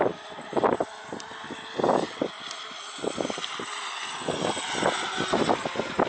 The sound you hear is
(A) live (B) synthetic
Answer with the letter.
A